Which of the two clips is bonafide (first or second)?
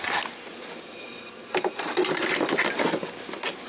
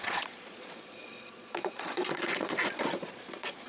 first